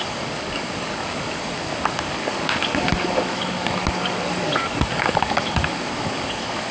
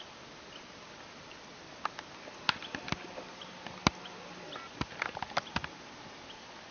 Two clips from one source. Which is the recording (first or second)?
second